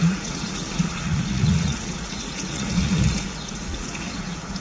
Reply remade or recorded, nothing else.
remade